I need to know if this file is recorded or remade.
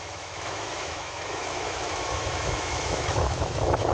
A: remade